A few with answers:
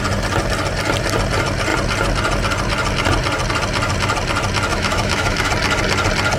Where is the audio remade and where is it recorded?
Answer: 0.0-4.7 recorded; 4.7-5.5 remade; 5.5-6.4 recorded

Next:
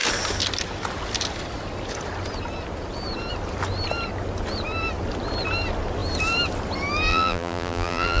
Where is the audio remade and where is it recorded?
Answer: 0.0-7.1 recorded; 7.1-8.2 remade

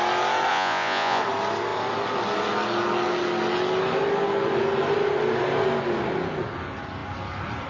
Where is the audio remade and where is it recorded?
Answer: 0.0-0.5 recorded; 0.5-1.2 remade; 1.2-7.7 recorded